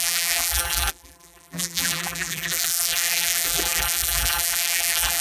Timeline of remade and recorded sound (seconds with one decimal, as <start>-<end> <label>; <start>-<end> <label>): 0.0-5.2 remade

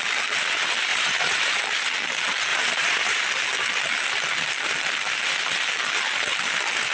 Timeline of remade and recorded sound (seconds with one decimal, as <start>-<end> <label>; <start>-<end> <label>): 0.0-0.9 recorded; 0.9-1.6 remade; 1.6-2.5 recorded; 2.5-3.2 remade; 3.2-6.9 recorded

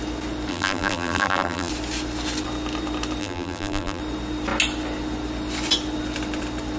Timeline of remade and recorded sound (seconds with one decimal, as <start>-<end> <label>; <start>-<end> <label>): 0.0-0.5 recorded; 0.5-1.7 remade; 1.7-3.2 recorded; 3.2-4.0 remade; 4.0-6.8 recorded

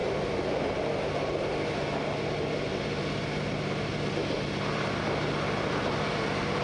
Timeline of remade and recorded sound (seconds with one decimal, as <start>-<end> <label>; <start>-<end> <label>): 0.0-6.6 recorded

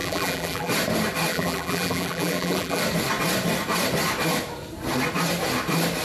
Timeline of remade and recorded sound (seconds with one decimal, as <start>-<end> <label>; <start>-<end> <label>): 0.0-0.7 remade; 0.7-1.3 recorded; 1.3-2.8 remade; 2.8-6.0 recorded

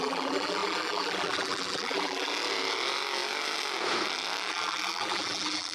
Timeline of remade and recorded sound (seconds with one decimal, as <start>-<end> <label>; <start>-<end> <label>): 0.0-2.3 remade; 2.3-4.5 recorded; 4.5-5.7 remade

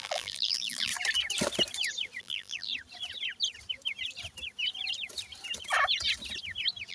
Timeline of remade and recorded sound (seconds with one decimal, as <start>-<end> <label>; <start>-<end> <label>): 0.0-0.9 remade; 0.9-2.2 recorded; 2.2-2.7 remade; 2.7-6.9 recorded